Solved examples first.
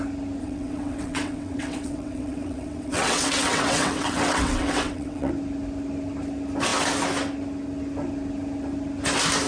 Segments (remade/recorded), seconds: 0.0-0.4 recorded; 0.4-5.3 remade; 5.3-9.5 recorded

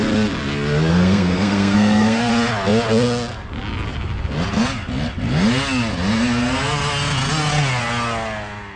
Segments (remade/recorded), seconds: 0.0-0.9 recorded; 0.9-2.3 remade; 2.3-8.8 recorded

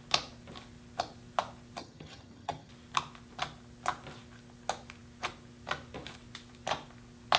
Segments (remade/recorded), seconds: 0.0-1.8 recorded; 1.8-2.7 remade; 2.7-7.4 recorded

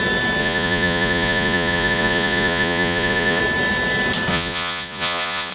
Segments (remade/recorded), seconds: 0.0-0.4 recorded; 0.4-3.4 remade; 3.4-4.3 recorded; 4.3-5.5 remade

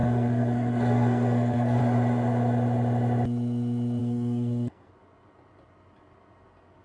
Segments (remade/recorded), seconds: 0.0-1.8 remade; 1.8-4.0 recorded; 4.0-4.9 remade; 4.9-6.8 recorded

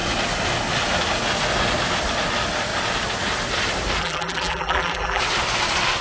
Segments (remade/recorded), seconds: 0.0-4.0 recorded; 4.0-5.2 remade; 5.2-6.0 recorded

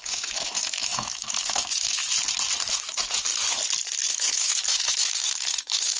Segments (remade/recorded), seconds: 0.0-2.0 remade; 2.0-2.7 recorded; 2.7-3.3 remade; 3.3-4.1 recorded; 4.1-6.0 remade